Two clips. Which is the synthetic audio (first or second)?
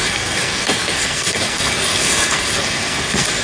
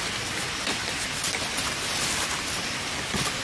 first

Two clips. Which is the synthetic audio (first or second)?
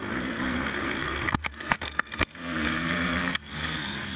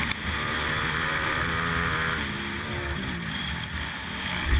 first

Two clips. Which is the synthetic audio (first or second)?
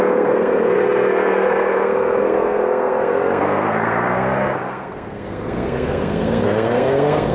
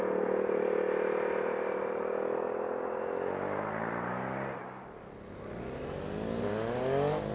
first